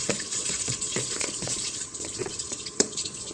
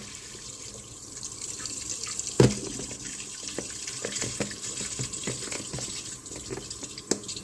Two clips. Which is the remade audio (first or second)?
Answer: first